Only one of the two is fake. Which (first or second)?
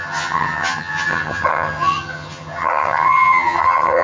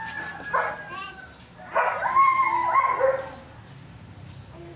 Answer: first